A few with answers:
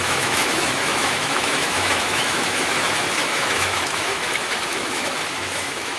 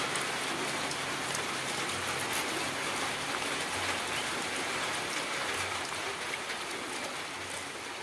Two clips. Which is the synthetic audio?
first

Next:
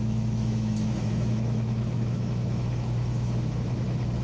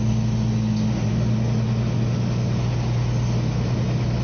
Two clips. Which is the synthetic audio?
first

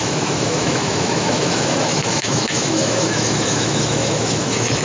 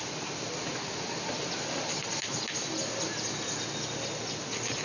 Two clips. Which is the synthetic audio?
first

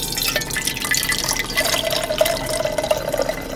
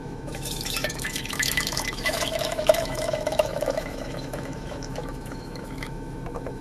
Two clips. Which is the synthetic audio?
second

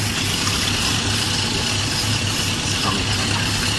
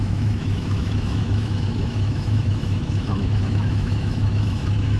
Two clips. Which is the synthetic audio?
second